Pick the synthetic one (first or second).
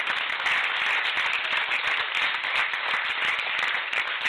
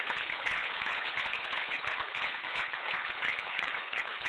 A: second